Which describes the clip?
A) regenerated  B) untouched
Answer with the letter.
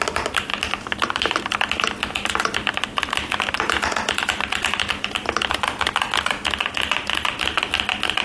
B